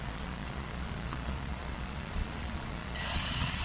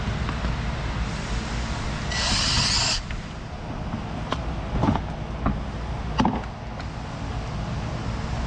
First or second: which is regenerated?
first